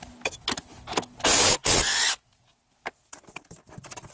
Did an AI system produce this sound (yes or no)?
no